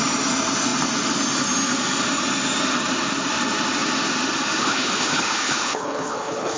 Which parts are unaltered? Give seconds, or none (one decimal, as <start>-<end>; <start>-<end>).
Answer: 0.0-4.6